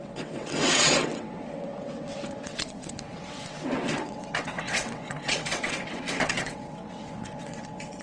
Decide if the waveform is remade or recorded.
remade